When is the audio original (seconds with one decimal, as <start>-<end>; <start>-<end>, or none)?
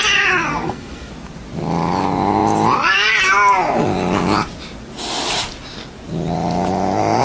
0.0-0.5; 1.1-7.2